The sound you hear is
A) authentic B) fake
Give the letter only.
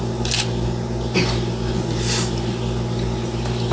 A